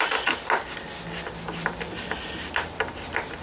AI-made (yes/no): no